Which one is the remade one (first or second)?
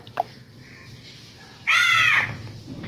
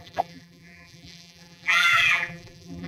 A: second